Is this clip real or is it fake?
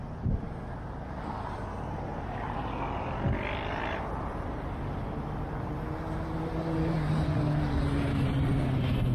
real